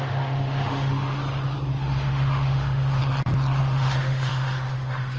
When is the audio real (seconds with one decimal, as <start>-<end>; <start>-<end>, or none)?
1.2-1.8; 3.0-3.6